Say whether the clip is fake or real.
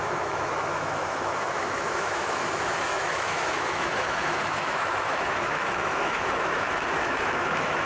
fake